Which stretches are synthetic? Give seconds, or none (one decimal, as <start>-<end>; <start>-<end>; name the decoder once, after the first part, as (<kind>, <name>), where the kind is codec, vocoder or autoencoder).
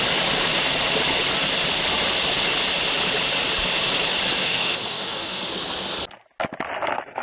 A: 4.4-5.5 (autoencoder, DAC-VAE)